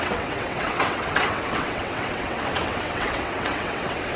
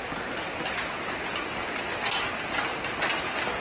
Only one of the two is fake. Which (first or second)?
first